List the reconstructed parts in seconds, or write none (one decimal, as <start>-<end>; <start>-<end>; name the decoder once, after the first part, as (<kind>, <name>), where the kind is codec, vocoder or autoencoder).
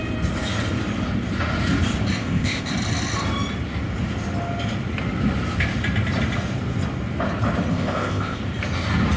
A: 2.2-2.7 (codec, ZipCodec); 7.7-8.4